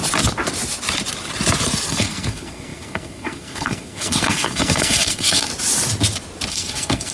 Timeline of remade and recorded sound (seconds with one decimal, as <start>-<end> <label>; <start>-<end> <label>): 0.0-1.9 recorded; 1.9-5.5 remade; 5.5-6.5 recorded; 6.5-7.1 remade